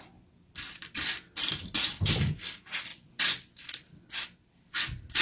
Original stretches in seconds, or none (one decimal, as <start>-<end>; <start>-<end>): 0.0-5.2

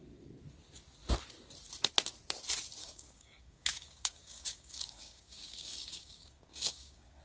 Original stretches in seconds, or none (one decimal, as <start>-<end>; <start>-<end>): 0.0-2.8

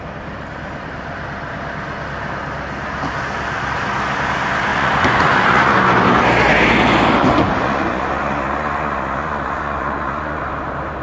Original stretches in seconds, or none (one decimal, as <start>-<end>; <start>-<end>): 0.0-4.7; 5.8-7.2; 10.4-11.0

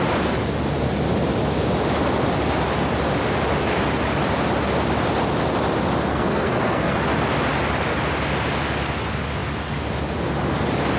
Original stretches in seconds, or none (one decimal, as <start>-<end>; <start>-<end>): 0.0-6.1; 6.9-11.0